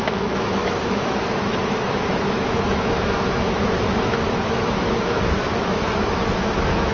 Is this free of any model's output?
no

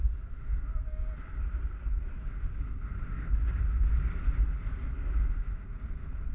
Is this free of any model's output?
yes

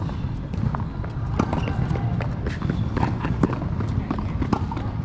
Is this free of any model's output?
yes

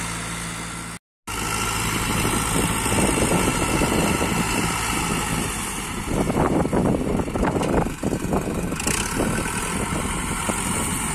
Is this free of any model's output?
yes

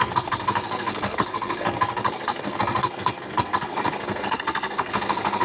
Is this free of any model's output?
no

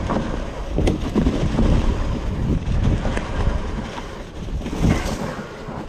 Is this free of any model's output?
yes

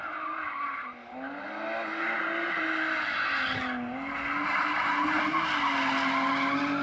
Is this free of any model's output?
yes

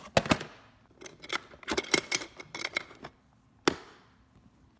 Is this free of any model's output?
yes